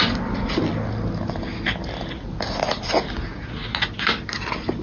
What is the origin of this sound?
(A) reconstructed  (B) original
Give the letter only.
B